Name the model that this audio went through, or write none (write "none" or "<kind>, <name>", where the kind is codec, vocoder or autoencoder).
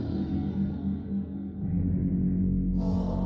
codec, SNAC